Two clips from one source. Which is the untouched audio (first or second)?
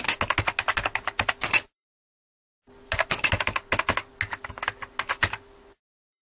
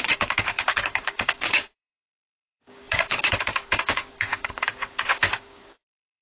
first